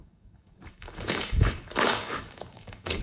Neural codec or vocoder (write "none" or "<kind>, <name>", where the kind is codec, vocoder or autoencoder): codec, DAC